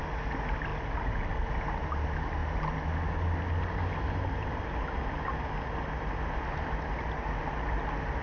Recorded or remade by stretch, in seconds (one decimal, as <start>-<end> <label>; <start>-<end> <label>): 0.0-8.2 recorded